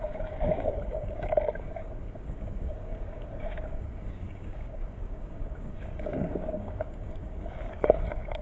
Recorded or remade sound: remade